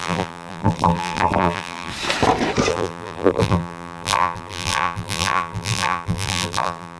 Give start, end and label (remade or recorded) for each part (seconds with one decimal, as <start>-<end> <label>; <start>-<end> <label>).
0.0-1.9 remade; 1.9-2.7 recorded; 2.7-7.0 remade